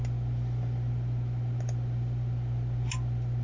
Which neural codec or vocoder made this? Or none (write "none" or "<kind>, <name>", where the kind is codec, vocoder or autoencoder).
none